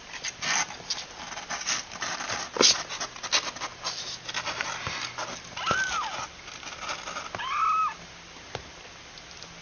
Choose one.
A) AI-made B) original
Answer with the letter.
B